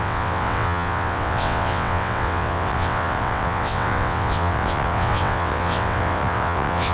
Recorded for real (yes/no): no